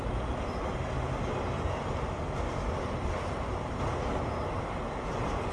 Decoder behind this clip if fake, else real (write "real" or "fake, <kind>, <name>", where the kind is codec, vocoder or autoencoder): real